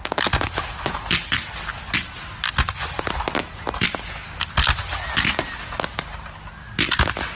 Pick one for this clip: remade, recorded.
recorded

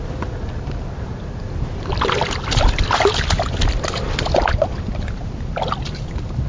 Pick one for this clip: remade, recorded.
recorded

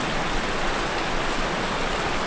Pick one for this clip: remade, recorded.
recorded